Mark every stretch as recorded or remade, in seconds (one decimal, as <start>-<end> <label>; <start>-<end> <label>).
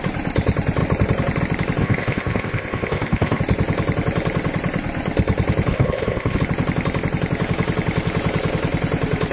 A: 0.0-1.8 recorded; 1.8-3.4 remade; 3.4-5.7 recorded; 5.7-6.4 remade; 6.4-9.3 recorded